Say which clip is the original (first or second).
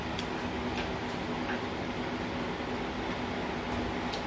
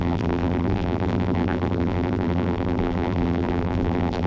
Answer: first